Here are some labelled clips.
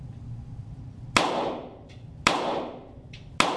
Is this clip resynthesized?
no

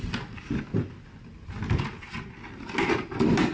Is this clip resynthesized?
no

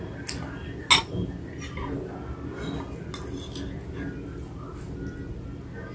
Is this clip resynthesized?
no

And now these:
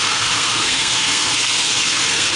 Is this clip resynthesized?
yes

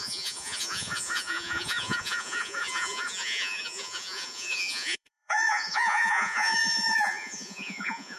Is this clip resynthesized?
yes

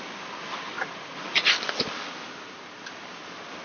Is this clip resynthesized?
no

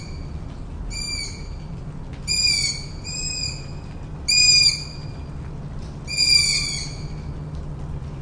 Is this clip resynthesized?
no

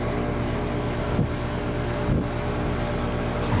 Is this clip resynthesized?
no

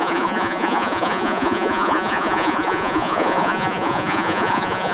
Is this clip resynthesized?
yes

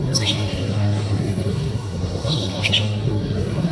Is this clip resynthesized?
yes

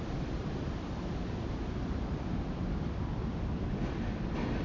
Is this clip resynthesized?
yes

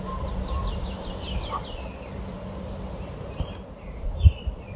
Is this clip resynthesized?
no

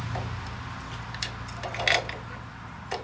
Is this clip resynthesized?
no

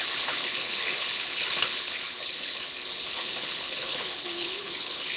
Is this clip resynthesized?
yes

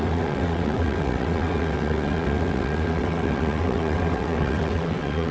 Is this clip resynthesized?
yes